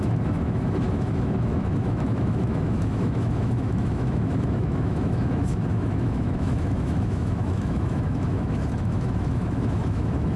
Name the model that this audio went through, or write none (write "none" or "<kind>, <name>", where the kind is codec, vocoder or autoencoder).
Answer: autoencoder, DAC-VAE